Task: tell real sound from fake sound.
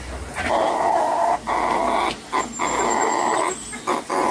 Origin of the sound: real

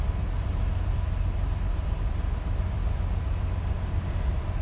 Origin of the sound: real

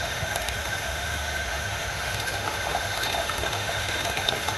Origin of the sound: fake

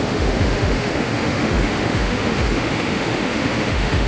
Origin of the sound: fake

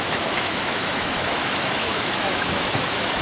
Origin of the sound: fake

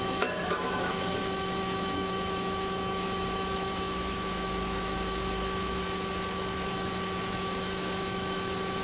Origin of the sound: fake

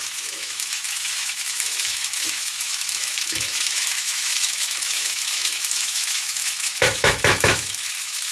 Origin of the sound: fake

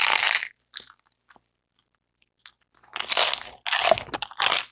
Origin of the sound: real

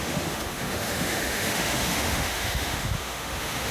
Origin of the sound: fake